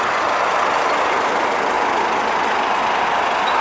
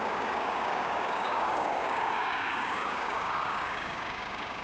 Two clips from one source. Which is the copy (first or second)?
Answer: second